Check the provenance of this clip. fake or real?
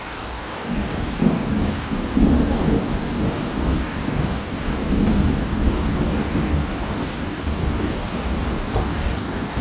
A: fake